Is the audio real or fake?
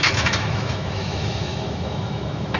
fake